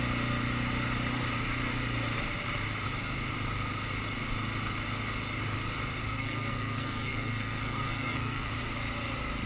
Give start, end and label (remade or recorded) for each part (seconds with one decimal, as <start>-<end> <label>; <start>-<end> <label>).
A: 0.0-6.0 recorded; 6.0-8.5 remade; 8.5-9.5 recorded